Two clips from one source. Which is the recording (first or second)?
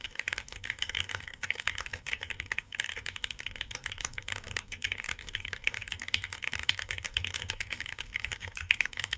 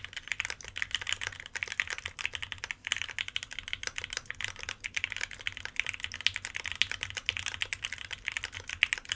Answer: second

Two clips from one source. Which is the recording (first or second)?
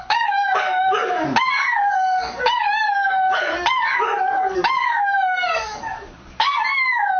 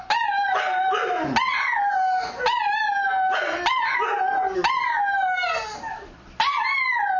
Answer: second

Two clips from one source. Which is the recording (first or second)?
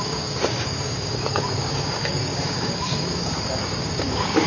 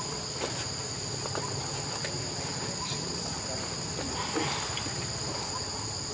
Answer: second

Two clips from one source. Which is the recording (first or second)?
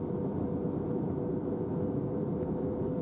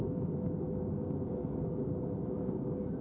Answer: first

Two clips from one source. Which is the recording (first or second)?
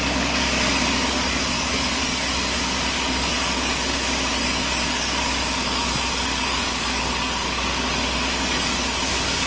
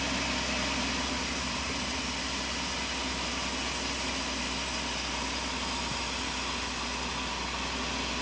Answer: second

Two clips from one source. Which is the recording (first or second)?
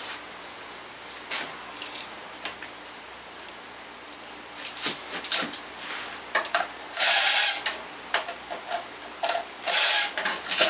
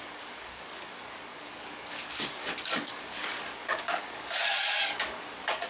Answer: first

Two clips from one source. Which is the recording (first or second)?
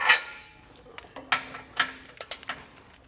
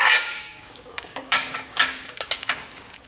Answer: first